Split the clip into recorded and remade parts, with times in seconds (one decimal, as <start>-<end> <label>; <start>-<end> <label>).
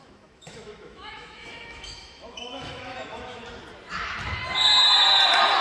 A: 0.0-3.4 remade; 3.4-5.6 recorded